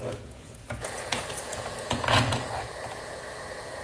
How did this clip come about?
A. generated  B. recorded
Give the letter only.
A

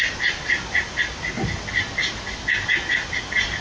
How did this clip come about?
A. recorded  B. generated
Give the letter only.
A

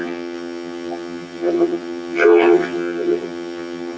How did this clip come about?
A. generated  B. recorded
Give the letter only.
A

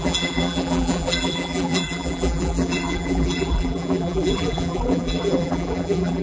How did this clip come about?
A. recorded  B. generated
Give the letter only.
B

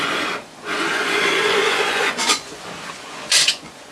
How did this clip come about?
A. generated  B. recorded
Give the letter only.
A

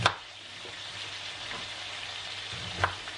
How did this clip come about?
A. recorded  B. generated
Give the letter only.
A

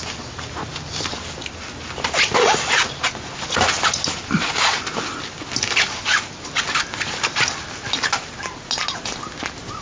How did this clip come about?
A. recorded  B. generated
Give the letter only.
A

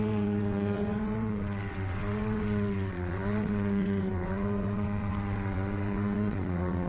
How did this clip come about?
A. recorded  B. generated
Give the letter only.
B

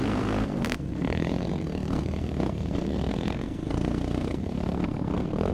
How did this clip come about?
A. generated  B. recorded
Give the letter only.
A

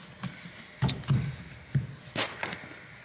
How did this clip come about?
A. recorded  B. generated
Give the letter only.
A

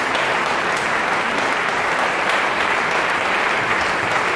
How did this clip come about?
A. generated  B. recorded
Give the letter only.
A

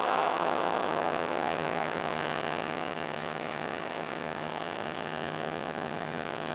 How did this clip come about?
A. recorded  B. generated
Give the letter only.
B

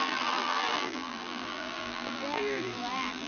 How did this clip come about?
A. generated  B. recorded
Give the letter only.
A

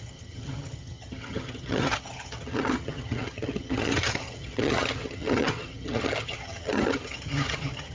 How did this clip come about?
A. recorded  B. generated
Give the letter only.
B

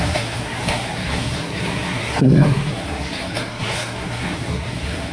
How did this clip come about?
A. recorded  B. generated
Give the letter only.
B